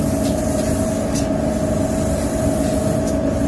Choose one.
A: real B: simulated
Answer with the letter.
A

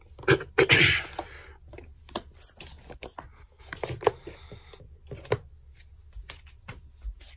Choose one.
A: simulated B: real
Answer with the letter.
B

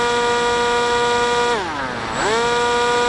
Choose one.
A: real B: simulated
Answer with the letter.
A